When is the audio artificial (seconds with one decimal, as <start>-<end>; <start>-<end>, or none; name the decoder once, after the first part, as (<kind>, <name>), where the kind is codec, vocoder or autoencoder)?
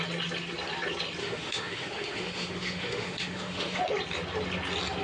1.2-3.8 (autoencoder, DAC-VAE)